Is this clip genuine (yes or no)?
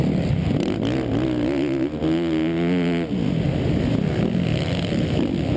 yes